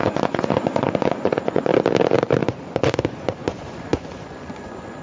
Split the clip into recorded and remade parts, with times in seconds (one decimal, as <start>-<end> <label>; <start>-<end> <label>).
0.0-1.7 remade; 1.7-2.4 recorded; 2.4-5.0 remade